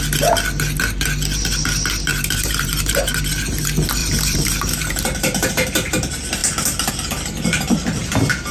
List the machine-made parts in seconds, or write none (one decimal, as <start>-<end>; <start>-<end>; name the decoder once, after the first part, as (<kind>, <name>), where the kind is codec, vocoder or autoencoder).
2.1-3.2 (vocoder, BigVGAN v2); 4.0-5.5